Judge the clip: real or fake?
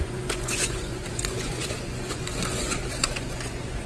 fake